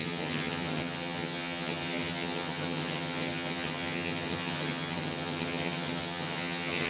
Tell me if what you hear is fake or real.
fake